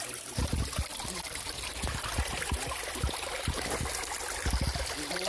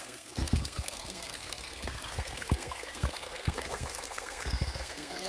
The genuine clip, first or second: first